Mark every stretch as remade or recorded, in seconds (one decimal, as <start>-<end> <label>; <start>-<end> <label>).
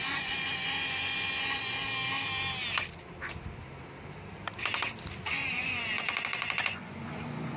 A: 0.0-1.8 remade; 1.8-5.3 recorded; 5.3-7.6 remade